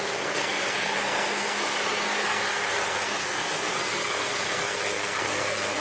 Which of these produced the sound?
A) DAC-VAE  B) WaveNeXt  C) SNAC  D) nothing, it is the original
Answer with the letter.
C